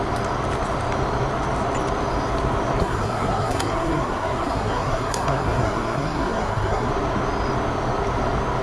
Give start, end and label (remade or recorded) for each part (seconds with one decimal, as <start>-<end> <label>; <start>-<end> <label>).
0.0-2.8 recorded; 2.8-6.9 remade; 6.9-8.6 recorded